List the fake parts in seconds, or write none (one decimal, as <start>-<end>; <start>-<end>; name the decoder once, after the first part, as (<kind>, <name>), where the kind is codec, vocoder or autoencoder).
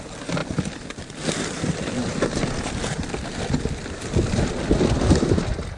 none